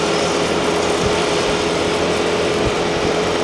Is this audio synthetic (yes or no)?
no